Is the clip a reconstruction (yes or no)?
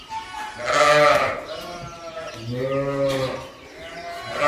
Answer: no